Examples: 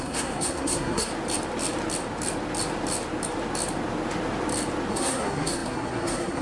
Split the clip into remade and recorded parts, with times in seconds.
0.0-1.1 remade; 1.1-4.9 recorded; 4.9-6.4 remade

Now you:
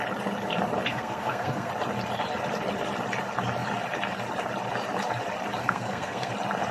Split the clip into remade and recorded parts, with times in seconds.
0.0-0.9 recorded; 0.9-1.7 remade; 1.7-5.6 recorded; 5.6-6.3 remade; 6.3-6.7 recorded